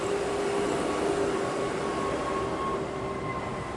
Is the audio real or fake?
real